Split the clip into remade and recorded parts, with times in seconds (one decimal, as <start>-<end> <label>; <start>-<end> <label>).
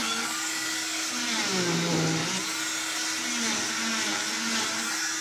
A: 0.0-1.1 remade; 1.1-5.2 recorded